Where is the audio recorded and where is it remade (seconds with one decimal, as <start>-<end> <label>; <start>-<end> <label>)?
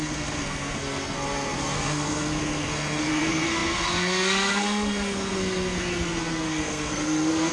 0.0-7.5 remade